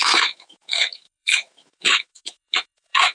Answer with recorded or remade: remade